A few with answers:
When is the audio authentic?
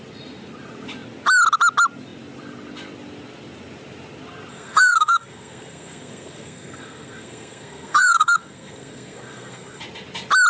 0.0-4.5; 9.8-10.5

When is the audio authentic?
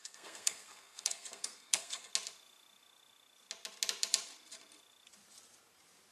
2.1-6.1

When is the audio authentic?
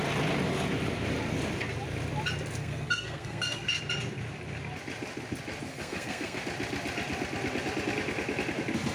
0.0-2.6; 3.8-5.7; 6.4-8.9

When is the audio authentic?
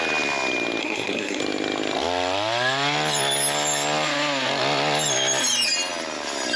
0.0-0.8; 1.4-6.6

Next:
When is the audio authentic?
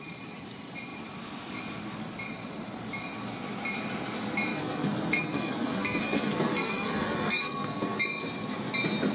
0.0-4.5; 8.0-9.1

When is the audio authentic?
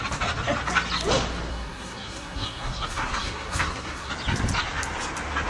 0.0-1.5; 4.1-5.5